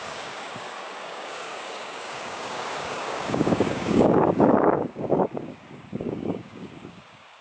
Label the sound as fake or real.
fake